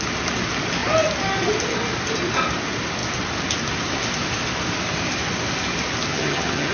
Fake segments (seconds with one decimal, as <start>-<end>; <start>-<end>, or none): 6.1-6.7

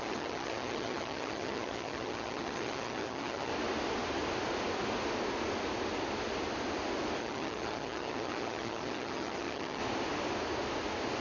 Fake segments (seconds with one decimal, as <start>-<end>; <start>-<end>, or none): 0.0-3.5; 7.2-9.8

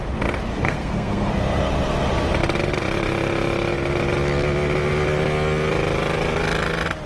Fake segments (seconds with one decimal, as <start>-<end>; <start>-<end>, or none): 0.5-1.3

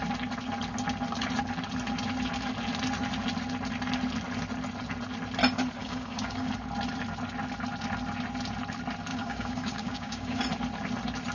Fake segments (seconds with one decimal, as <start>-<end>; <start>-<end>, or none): 5.8-6.5; 9.1-10.4

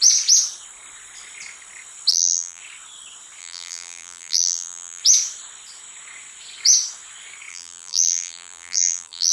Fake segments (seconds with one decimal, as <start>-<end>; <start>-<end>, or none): 2.1-2.6; 3.4-5.0; 7.5-9.3

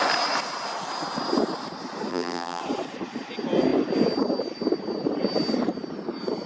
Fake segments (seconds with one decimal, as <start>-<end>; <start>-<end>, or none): 2.1-2.6